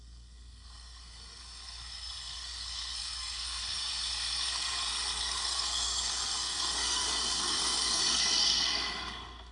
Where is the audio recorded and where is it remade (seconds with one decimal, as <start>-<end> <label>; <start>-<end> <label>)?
0.0-9.5 remade